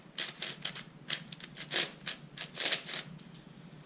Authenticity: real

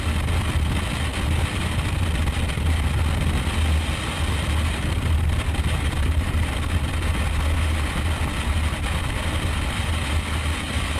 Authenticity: real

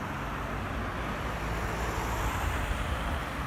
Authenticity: real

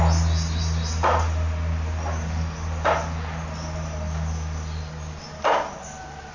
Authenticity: real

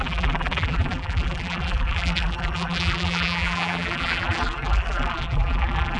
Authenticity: fake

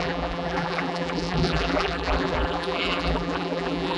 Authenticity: fake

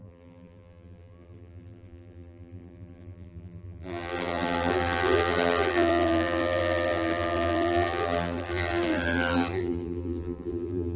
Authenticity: fake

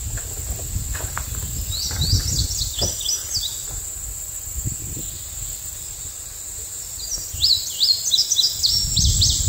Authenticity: real